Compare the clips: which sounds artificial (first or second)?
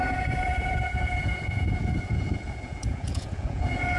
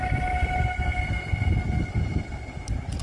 first